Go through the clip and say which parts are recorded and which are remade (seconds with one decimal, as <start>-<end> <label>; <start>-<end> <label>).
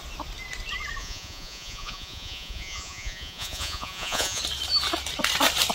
0.0-1.0 recorded; 1.0-4.4 remade; 4.4-5.7 recorded